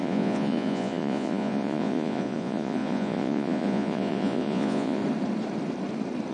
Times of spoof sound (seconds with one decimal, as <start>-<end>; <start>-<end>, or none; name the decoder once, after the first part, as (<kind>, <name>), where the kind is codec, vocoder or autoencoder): 0.0-5.0 (vocoder, Vocos)